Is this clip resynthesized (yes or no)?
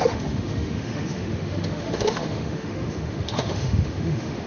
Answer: yes